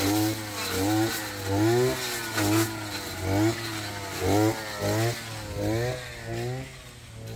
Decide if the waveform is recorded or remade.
recorded